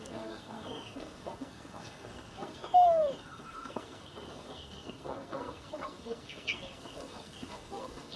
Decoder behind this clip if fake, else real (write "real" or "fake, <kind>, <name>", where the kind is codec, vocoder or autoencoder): fake, codec, SNAC